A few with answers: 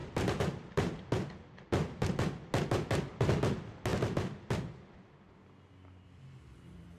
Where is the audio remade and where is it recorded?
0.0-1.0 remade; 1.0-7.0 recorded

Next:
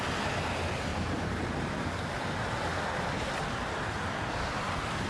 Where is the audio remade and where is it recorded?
0.0-0.9 recorded; 0.9-1.7 remade; 1.7-2.7 recorded; 2.7-3.3 remade; 3.3-5.1 recorded

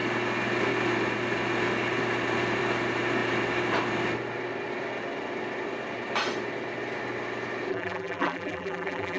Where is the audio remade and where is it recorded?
0.0-7.7 recorded; 7.7-9.2 remade

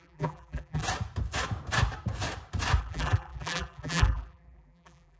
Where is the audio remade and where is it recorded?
0.0-0.8 remade; 0.8-2.8 recorded; 2.8-5.2 remade

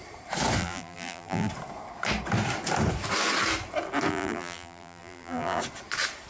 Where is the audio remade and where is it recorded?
0.0-0.6 recorded; 0.6-1.5 remade; 1.5-4.1 recorded; 4.1-5.6 remade; 5.6-6.3 recorded

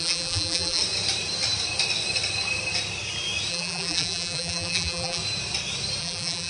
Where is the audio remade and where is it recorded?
0.0-0.8 remade; 0.8-3.5 recorded; 3.5-5.2 remade; 5.2-6.0 recorded; 6.0-6.5 remade

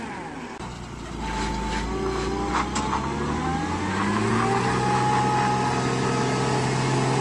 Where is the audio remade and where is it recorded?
0.0-7.2 recorded